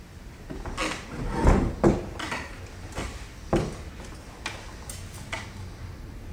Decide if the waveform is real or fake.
real